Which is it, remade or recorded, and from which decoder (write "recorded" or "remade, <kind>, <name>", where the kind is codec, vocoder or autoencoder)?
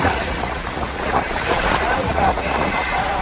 remade, vocoder, Vocos